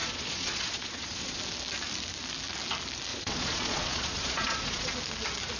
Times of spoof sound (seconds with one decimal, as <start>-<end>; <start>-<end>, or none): 0.0-1.4; 3.1-4.9